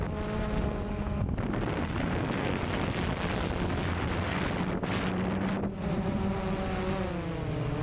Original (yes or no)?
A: yes